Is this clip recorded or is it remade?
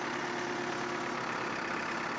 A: recorded